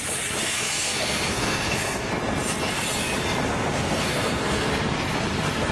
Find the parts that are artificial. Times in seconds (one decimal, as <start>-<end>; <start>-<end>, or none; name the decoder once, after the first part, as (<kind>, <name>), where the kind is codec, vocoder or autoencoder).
0.4-2.1 (codec, SNAC); 3.5-4.7

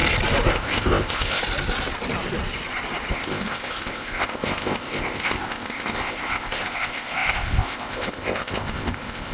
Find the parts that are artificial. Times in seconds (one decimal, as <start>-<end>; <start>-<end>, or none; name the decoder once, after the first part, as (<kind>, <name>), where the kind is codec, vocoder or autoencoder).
0.5-1.4 (codec, ZipCodec); 3.1-9.3

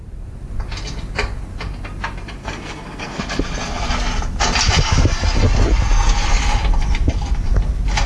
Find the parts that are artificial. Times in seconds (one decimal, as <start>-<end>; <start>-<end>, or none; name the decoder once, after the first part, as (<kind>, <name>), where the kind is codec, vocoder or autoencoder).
2.4-3.2 (codec, SNAC)